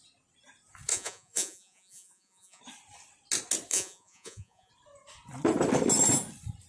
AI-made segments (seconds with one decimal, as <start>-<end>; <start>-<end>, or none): 0.9-2.6; 3.7-4.7